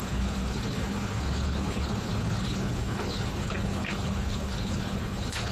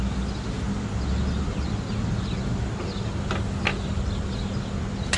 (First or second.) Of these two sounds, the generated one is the first